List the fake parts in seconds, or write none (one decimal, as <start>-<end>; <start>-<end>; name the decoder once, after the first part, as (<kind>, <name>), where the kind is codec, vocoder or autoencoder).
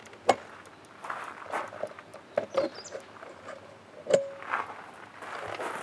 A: none